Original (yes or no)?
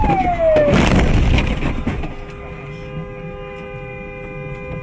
yes